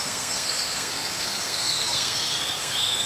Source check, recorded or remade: remade